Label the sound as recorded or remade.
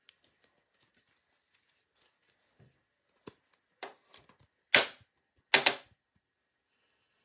recorded